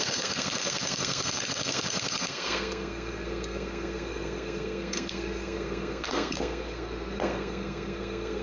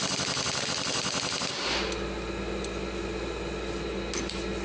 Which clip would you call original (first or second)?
second